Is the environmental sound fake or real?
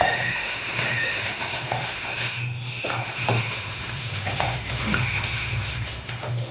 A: fake